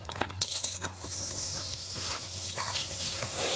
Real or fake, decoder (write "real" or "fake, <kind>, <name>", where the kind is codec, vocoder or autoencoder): fake, codec, SNAC